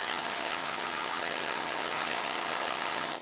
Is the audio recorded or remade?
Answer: remade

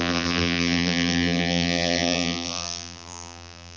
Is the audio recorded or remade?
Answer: remade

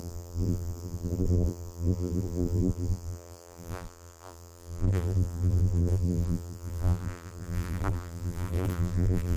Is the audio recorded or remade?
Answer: remade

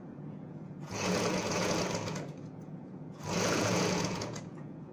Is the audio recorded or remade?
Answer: remade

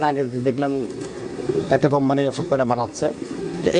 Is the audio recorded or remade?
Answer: remade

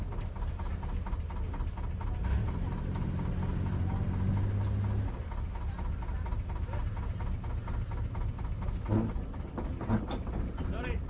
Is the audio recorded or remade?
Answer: recorded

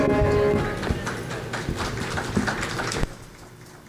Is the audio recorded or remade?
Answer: recorded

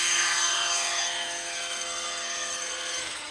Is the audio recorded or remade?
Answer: remade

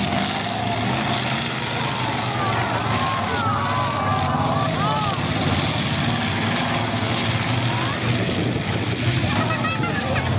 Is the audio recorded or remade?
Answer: recorded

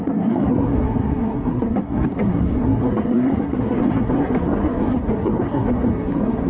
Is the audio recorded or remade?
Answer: remade